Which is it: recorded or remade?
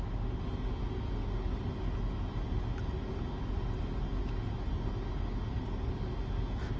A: recorded